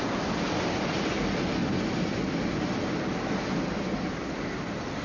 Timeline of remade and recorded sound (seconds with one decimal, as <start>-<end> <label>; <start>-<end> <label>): 0.0-5.0 recorded